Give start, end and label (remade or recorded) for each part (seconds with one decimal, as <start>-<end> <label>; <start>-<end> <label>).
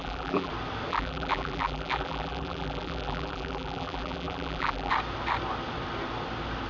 0.0-0.5 remade; 0.5-0.9 recorded; 0.9-4.9 remade; 4.9-6.7 recorded